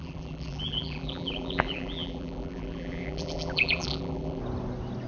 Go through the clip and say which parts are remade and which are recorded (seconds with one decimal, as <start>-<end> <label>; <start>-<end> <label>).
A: 0.0-4.4 remade; 4.4-5.1 recorded